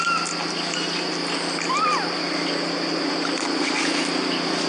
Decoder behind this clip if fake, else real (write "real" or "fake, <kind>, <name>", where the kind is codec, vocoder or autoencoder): real